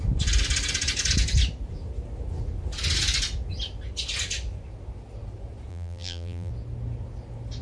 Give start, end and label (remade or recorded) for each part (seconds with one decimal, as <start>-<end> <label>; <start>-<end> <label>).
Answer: 0.0-5.7 recorded; 5.7-6.5 remade; 6.5-7.6 recorded